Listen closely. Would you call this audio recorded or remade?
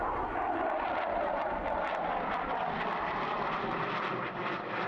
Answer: recorded